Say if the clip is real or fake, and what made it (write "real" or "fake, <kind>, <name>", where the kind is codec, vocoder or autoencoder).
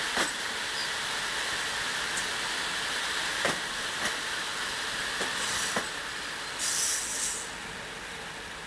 real